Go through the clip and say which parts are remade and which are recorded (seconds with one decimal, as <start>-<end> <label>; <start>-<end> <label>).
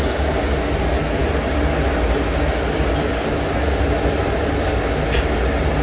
0.0-5.8 recorded